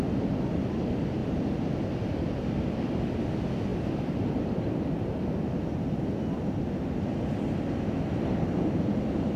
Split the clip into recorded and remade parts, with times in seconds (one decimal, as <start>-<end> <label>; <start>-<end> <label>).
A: 0.0-9.4 recorded